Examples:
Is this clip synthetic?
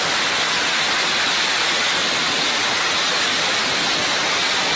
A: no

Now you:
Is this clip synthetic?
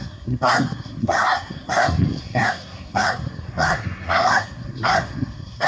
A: yes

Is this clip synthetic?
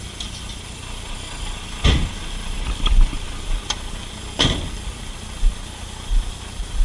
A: no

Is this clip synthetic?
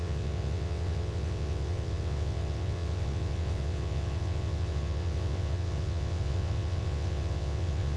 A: yes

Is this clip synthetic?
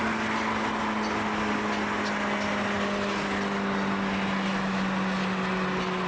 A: no